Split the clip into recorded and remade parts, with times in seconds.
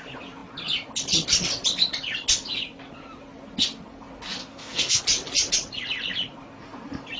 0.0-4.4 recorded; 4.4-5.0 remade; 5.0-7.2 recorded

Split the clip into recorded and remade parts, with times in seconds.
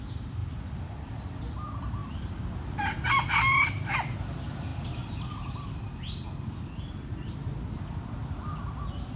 0.0-0.4 recorded; 0.4-1.4 remade; 1.4-8.2 recorded; 8.2-9.2 remade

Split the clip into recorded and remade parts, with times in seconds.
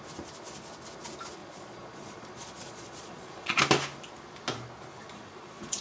0.0-1.4 recorded; 1.4-3.6 remade; 3.6-5.0 recorded; 5.0-5.8 remade